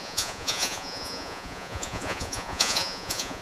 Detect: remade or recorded remade